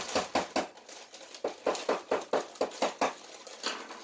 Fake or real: real